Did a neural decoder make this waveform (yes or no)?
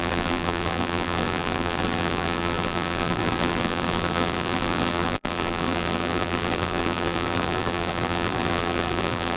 yes